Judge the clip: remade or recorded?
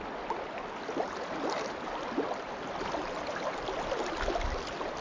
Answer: recorded